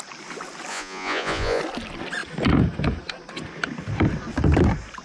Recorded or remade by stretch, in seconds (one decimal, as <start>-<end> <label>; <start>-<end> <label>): 0.0-0.7 recorded; 0.7-1.6 remade; 1.6-5.0 recorded